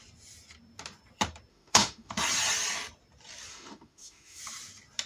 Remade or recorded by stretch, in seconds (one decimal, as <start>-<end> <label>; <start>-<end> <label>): 0.0-1.5 recorded; 1.5-2.1 remade; 2.1-3.5 recorded; 3.5-4.4 remade; 4.4-5.1 recorded

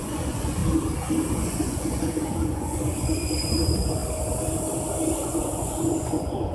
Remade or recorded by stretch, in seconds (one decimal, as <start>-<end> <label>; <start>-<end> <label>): 0.0-0.6 remade; 0.6-1.3 recorded; 1.3-4.0 remade; 4.0-5.1 recorded; 5.1-6.5 remade

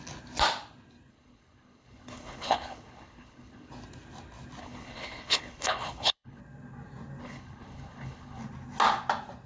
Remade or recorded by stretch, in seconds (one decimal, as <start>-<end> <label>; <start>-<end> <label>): 0.0-1.1 recorded; 1.1-3.7 remade; 3.7-4.6 recorded; 4.6-6.4 remade; 6.4-7.2 recorded; 7.2-8.4 remade; 8.4-9.5 recorded

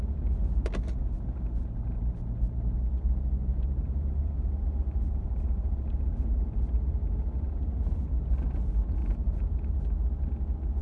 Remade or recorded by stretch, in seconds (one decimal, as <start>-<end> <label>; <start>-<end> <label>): 0.0-3.4 recorded; 3.4-7.8 remade; 7.8-9.0 recorded; 9.0-9.8 remade; 9.8-10.8 recorded

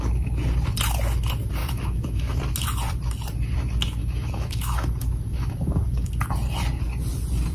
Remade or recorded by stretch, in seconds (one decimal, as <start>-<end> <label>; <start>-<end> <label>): 0.0-1.6 recorded; 1.6-2.4 remade; 2.4-4.0 recorded; 4.0-6.1 remade; 6.1-7.5 recorded

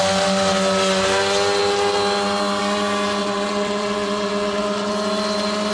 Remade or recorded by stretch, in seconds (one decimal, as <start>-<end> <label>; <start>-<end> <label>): 0.0-3.2 recorded; 3.2-4.9 remade; 4.9-5.7 recorded

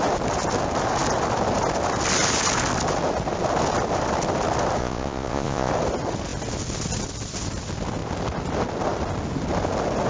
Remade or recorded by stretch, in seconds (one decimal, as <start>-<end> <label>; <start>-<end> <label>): 0.0-4.8 recorded; 4.8-5.7 remade; 5.7-10.1 recorded

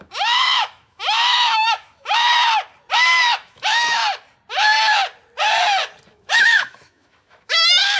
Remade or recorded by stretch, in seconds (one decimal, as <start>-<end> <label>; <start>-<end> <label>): 0.0-2.3 remade; 2.3-2.9 recorded; 2.9-4.0 remade; 4.0-6.1 recorded; 6.1-8.0 remade